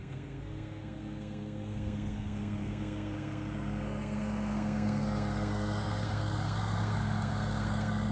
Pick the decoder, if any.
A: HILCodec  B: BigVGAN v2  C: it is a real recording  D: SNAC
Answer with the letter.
D